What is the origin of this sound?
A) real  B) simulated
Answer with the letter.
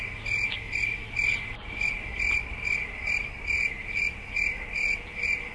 A